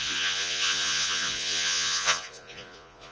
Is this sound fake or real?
fake